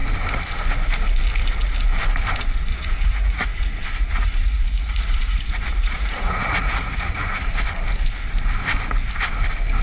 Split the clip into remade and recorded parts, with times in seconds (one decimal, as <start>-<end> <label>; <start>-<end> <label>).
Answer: 0.0-2.7 recorded; 2.7-7.5 remade; 7.5-9.8 recorded